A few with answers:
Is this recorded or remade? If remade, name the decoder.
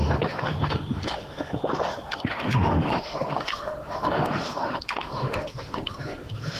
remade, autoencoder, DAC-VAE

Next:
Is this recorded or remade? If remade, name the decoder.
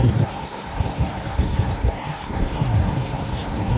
remade, codec, SNAC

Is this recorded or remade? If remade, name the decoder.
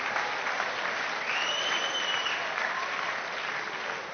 recorded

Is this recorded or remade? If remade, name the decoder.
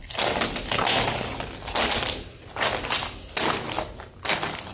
recorded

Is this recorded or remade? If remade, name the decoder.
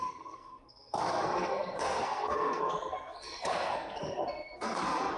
remade, codec, SNAC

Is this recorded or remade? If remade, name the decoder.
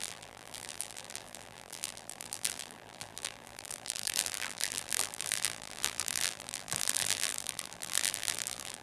remade, vocoder, BigVGAN v2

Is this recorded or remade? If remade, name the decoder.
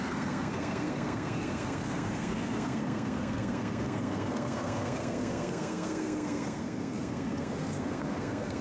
remade, codec, SNAC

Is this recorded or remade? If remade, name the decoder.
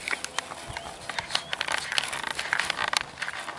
recorded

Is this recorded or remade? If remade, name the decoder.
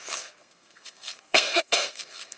remade, codec, SNAC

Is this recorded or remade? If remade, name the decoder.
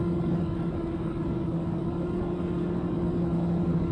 remade, codec, DAC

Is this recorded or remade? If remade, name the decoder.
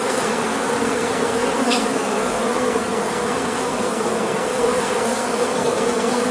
remade, codec, SNAC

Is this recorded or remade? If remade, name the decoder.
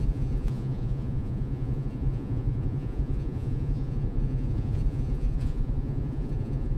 remade, vocoder, Vocos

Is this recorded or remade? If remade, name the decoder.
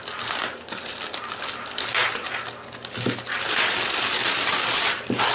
recorded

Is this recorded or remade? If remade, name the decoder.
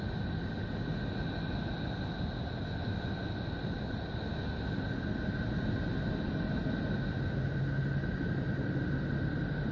recorded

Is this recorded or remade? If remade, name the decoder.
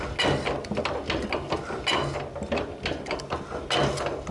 recorded